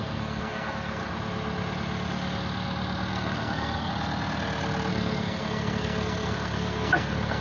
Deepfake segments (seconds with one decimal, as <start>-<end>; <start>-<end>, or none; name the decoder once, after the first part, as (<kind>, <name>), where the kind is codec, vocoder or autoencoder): 0.0-1.0 (codec, SNAC); 3.1-3.9; 4.9-7.4

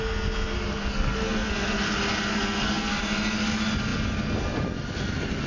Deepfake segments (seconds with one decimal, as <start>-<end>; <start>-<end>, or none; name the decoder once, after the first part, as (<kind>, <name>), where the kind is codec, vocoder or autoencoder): 0.7-1.8 (codec, SNAC); 2.3-3.0